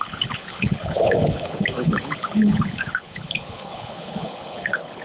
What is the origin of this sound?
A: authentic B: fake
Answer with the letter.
B